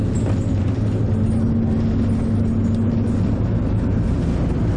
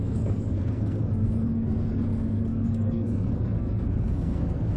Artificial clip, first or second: second